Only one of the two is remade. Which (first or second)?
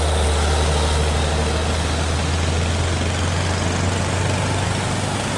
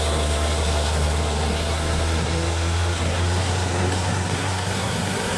second